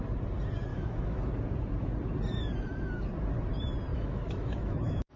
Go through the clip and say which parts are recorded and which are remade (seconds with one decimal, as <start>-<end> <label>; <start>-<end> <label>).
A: 0.0-0.7 recorded; 0.7-1.3 remade; 1.3-3.9 recorded; 3.9-5.2 remade

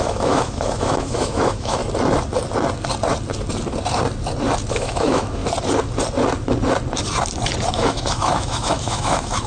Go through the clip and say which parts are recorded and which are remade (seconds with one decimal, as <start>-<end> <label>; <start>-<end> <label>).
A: 0.0-1.8 remade; 1.8-4.7 recorded; 4.7-5.4 remade; 5.4-7.7 recorded; 7.7-9.5 remade

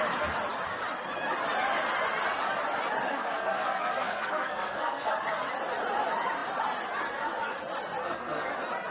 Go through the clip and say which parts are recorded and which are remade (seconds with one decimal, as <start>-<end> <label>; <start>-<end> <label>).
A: 0.0-3.1 recorded; 3.1-5.1 remade; 5.1-8.0 recorded; 8.0-8.5 remade; 8.5-8.9 recorded

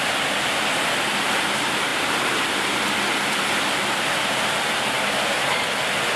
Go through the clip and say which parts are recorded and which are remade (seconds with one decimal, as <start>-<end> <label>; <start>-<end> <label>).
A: 0.0-6.2 recorded

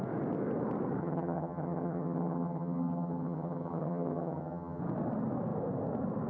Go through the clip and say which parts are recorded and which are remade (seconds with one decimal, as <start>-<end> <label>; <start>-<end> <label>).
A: 0.0-1.0 recorded; 1.0-4.8 remade; 4.8-6.3 recorded

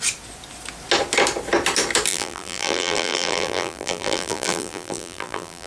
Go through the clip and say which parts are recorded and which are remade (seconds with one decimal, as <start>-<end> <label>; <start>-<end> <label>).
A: 0.0-2.1 recorded; 2.1-5.7 remade

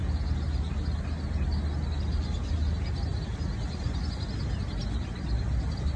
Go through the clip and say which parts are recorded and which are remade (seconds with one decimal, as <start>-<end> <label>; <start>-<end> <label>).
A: 0.0-6.0 recorded